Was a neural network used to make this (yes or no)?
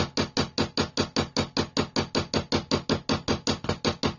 no